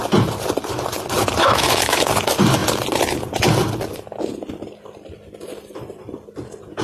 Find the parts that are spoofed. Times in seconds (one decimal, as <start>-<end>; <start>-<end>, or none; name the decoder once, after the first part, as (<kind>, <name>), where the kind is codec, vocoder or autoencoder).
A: 1.4-2.1 (autoencoder, DAC-VAE)